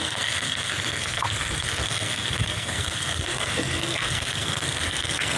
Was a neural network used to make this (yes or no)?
yes